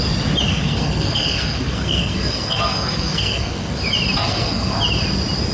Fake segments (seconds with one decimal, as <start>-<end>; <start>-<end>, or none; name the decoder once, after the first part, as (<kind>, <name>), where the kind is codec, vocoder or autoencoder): 0.5-3.8 (codec, SNAC); 4.2-4.8